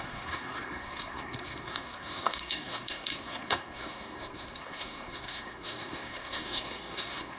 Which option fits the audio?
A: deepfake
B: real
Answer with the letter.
A